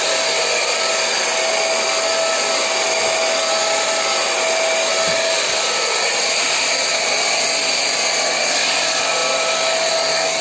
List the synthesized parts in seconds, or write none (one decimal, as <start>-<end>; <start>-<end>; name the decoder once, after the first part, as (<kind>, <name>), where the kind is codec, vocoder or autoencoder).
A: none